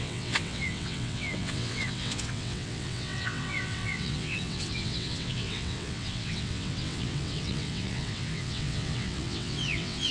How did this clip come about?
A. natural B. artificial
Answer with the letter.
B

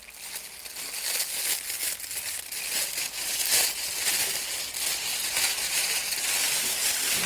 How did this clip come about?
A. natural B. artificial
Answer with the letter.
A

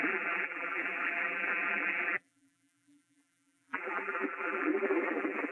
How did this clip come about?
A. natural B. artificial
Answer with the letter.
B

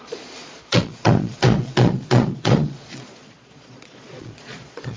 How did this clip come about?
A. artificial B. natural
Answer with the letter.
A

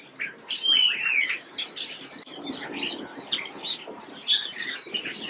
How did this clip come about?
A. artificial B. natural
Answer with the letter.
B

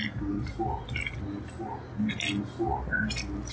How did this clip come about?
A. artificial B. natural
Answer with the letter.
B